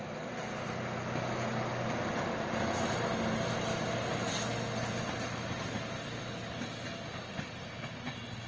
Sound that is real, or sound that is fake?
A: real